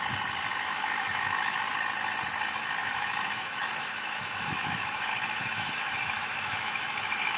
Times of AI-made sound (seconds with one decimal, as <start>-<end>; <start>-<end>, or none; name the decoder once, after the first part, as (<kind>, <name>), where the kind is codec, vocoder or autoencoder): 0.5-1.6 (autoencoder, DAC-VAE); 2.8-7.4